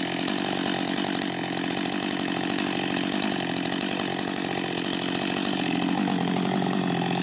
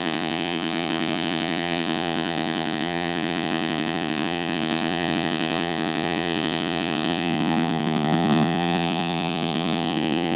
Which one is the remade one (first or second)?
second